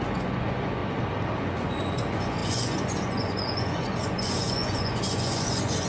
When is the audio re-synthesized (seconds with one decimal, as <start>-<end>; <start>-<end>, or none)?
0.0-0.8; 1.4-5.9